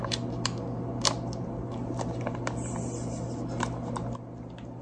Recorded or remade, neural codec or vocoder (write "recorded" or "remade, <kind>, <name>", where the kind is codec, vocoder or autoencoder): recorded